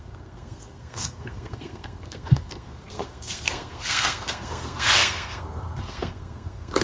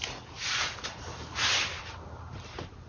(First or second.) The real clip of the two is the second